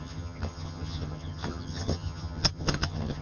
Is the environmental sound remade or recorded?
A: remade